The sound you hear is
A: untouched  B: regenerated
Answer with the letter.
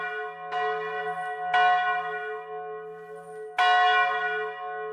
A